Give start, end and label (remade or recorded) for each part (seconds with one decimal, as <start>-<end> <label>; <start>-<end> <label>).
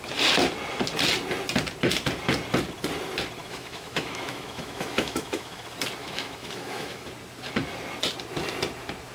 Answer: 0.0-3.4 recorded; 3.4-5.6 remade; 5.6-6.0 recorded; 6.0-7.1 remade; 7.1-9.1 recorded